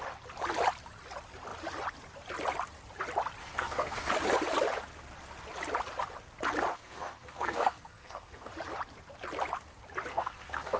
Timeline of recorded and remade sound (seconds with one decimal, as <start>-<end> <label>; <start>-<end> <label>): 0.0-3.4 recorded; 3.4-4.1 remade; 4.1-6.7 recorded; 6.7-8.5 remade; 8.5-10.1 recorded; 10.1-10.8 remade